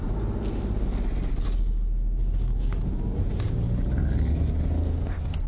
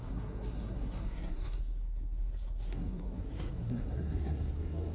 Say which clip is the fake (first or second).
second